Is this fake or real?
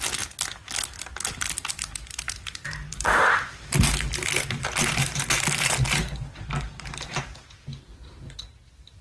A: real